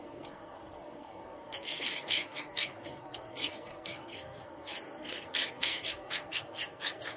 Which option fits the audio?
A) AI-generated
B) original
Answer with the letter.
A